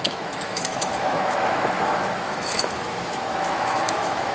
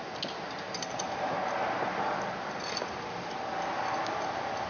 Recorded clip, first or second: second